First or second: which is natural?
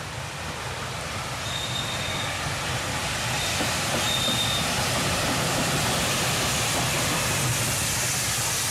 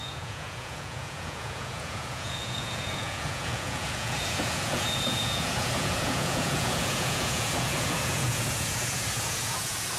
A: first